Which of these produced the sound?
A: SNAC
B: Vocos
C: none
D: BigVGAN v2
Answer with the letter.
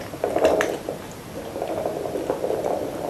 C